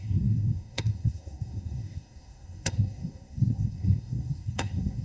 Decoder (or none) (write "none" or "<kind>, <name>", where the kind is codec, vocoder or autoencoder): codec, SNAC